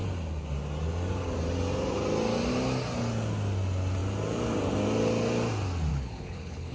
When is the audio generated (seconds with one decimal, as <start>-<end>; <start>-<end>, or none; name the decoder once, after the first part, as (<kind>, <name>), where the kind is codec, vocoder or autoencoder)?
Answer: 5.9-6.7 (codec, HILCodec)